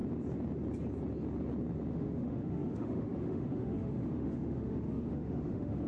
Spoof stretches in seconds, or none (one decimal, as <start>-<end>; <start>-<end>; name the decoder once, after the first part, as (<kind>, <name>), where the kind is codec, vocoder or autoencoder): 1.9-5.9 (autoencoder, DAC-VAE)